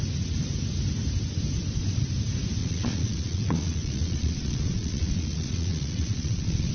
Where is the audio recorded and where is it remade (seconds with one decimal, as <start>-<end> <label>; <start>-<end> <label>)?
0.0-2.6 recorded; 2.6-6.7 remade